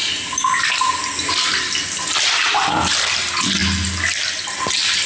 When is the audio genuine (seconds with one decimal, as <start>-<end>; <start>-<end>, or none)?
0.0-5.1